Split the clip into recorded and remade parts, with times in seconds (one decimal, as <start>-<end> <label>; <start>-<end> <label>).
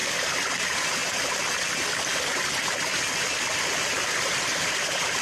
0.0-0.5 recorded; 0.5-1.0 remade; 1.0-3.9 recorded; 3.9-5.2 remade